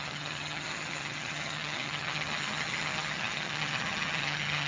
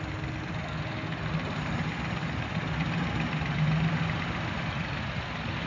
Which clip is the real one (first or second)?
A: second